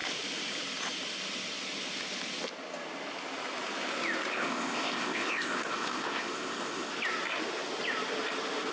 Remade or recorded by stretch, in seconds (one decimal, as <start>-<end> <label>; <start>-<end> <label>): 0.0-4.3 recorded; 4.3-6.9 remade; 6.9-8.7 recorded